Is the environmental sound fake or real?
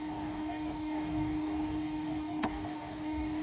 fake